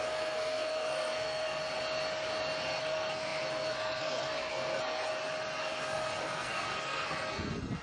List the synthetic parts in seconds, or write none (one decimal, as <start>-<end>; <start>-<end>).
0.0-1.6; 2.8-5.1; 5.6-7.8